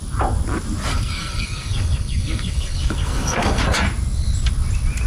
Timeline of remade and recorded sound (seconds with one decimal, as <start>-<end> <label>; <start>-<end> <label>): 0.0-0.9 recorded; 0.9-3.6 remade; 3.6-5.1 recorded